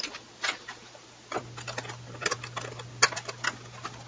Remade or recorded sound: recorded